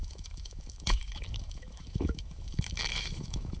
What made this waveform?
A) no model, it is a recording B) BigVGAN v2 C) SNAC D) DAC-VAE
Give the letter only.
D